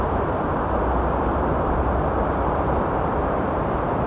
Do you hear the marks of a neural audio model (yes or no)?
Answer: yes